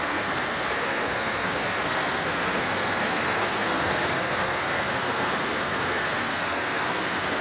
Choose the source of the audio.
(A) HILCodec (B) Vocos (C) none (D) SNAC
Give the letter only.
D